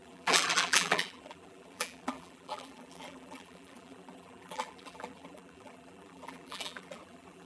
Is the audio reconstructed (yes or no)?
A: yes